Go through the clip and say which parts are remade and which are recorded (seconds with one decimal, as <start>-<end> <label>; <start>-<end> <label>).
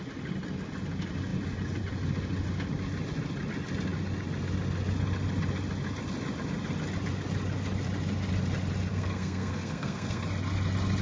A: 0.0-8.9 recorded; 8.9-10.2 remade; 10.2-11.0 recorded